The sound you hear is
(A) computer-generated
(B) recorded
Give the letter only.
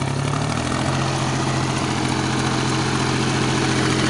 B